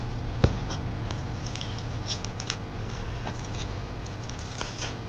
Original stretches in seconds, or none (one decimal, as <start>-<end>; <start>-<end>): 0.0-2.8; 3.3-5.1